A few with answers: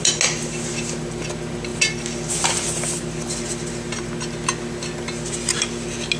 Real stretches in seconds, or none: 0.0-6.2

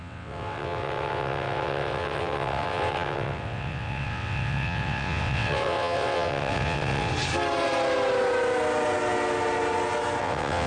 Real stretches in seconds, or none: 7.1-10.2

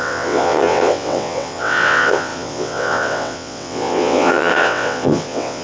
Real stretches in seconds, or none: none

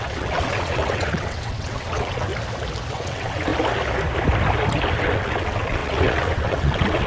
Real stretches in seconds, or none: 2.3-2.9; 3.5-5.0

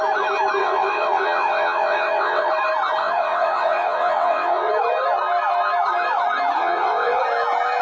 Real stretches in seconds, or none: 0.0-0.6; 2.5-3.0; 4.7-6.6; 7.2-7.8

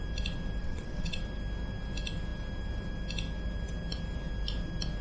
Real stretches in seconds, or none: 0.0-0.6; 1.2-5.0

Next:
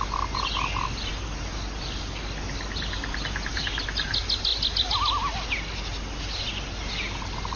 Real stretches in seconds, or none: 0.0-7.6